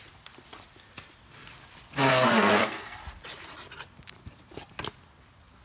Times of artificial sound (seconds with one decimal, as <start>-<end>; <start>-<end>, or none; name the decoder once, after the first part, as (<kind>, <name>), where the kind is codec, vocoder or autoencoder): 2.1-3.0 (codec, SNAC)